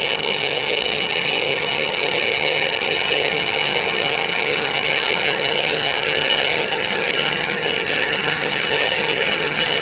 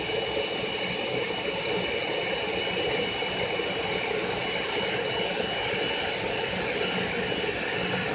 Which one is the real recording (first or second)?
second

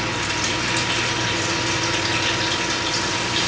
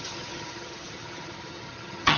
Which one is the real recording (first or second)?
first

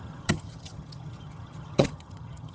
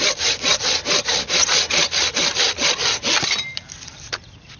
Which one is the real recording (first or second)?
second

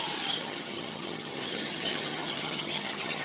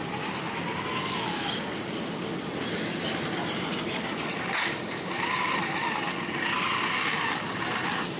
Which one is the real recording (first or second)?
second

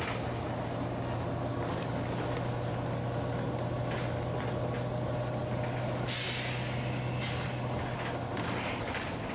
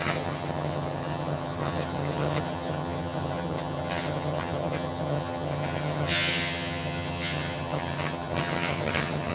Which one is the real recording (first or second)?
first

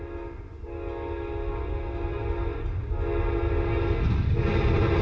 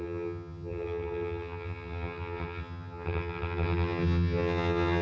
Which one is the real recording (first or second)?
first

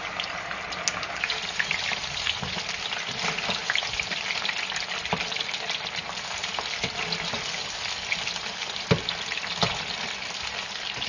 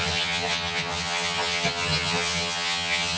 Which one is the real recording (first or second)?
first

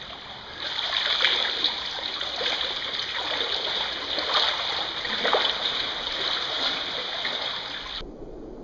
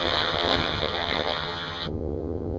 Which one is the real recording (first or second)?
first